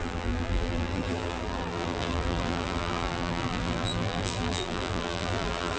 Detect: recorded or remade remade